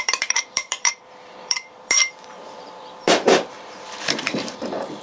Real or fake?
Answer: fake